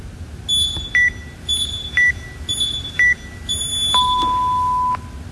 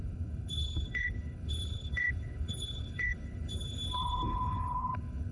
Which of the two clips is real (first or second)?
first